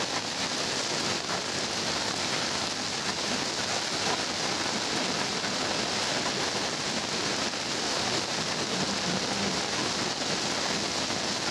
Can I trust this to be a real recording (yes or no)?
yes